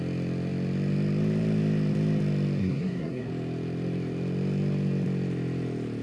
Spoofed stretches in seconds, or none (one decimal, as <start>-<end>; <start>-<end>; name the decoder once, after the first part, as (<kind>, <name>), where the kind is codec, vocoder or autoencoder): 2.6-3.3 (codec, SNAC)